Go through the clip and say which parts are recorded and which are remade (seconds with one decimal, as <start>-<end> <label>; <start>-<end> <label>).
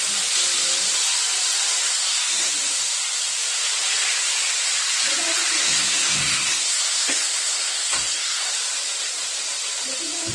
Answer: 0.0-1.9 recorded; 1.9-2.5 remade; 2.5-5.6 recorded; 5.6-8.5 remade; 8.5-10.3 recorded